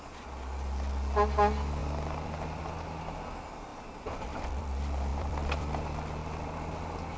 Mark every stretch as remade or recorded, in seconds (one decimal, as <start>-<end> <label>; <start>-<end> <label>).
0.0-1.8 recorded; 1.8-2.6 remade; 2.6-3.7 recorded; 3.7-4.6 remade; 4.6-5.1 recorded; 5.1-5.7 remade; 5.7-7.2 recorded